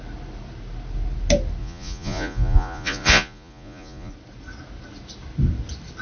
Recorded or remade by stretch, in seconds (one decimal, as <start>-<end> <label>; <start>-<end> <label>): 0.0-1.6 recorded; 1.6-4.1 remade; 4.1-6.0 recorded